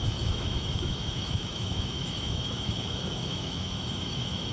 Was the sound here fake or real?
fake